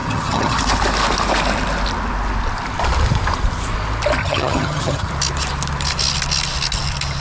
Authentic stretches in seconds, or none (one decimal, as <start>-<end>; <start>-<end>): 0.6-4.2; 5.1-7.2